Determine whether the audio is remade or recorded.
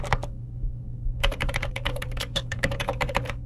remade